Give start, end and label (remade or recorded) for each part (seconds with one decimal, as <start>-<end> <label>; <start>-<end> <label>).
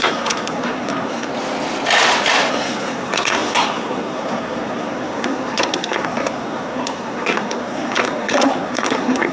0.0-1.3 remade; 1.3-2.5 recorded; 2.5-9.3 remade